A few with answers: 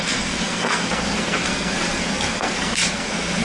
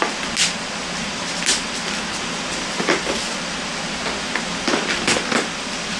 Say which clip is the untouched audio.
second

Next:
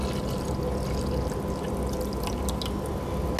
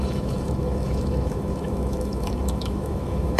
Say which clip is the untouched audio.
first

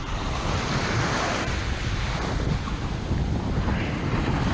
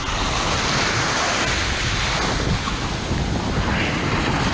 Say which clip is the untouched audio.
second